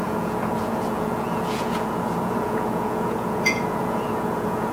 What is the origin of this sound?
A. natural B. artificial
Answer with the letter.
B